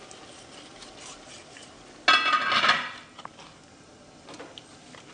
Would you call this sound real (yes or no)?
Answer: yes